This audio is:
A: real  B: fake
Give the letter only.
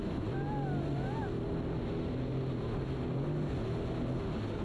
A